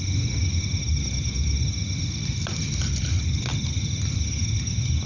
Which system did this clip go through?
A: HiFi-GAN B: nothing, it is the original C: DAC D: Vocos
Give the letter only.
B